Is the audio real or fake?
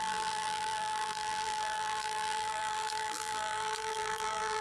fake